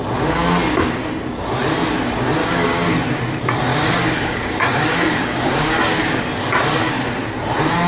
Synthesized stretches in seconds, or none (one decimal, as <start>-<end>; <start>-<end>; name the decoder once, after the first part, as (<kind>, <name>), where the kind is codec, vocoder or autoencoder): 2.4-3.0 (codec, DAC); 3.7-6.2